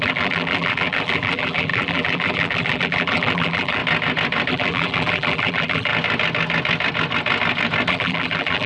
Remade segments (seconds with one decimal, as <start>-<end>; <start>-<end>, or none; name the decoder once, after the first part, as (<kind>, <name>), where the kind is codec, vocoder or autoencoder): 0.0-3.8 (vocoder, BigVGAN v2); 4.5-5.9; 7.9-8.7